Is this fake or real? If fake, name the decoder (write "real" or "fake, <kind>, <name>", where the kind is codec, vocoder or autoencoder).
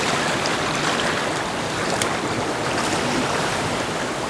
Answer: real